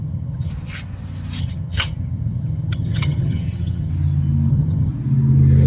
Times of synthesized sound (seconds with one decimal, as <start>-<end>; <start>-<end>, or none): 0.0-0.5; 1.4-3.9; 4.5-4.9